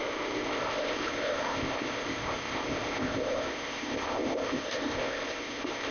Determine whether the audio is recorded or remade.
remade